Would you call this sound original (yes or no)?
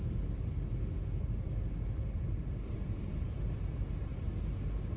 yes